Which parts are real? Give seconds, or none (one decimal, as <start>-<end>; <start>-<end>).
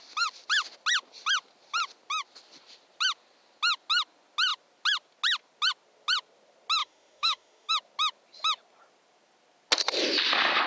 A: 0.0-6.8; 7.7-10.7